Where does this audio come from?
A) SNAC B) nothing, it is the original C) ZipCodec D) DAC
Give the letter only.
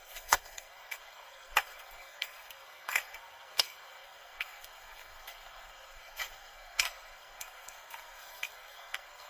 A